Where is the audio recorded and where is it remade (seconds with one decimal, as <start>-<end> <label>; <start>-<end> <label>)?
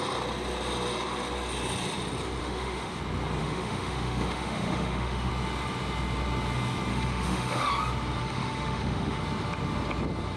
0.0-2.4 recorded; 2.4-3.0 remade; 3.0-3.4 recorded; 3.4-5.3 remade; 5.3-6.9 recorded; 6.9-7.7 remade; 7.7-8.2 recorded; 8.2-9.2 remade; 9.2-10.4 recorded